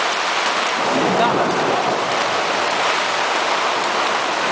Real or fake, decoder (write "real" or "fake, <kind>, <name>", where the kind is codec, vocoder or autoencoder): real